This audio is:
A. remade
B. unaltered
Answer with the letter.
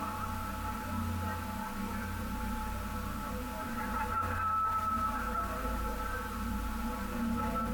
B